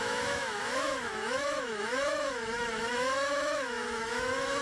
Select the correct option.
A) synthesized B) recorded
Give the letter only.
A